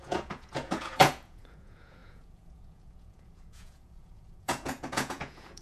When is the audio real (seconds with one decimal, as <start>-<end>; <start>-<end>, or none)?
none